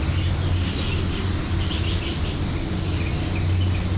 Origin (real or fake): real